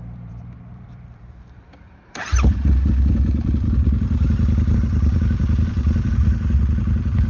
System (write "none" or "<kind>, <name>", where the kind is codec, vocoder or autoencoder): vocoder, BigVGAN v2